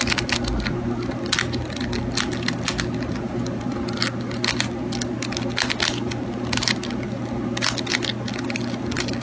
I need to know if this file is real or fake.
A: real